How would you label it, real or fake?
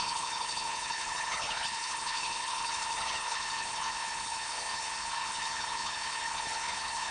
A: fake